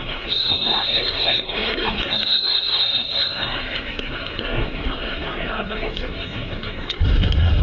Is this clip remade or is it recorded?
remade